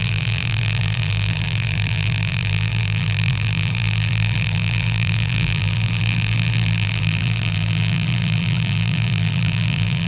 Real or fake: fake